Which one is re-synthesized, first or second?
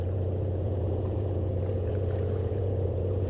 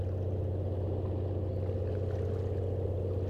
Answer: first